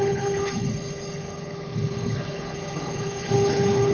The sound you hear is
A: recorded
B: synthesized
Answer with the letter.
B